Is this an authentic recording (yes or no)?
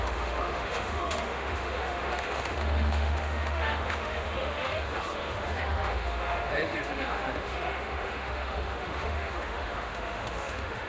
no